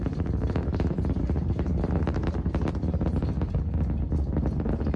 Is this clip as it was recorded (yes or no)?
no